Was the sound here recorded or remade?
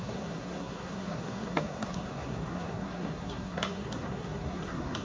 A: remade